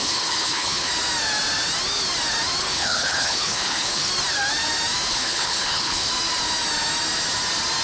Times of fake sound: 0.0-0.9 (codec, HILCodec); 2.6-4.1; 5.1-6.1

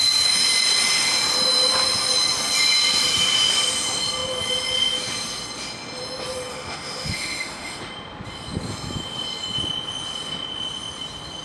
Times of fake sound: 6.5-7.8 (autoencoder, DAC-VAE)

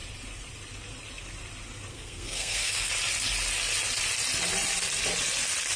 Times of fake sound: 1.9-2.9 (codec, SNAC)

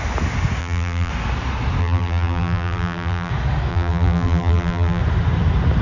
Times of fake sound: 0.6-1.1 (vocoder, BigVGAN v2); 1.8-3.3; 3.7-5.0

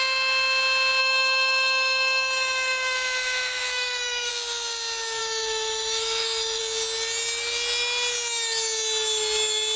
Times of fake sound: 1.0-4.3 (autoencoder, DAC-VAE); 5.2-6.6